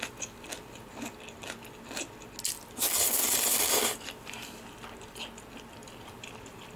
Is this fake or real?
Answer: real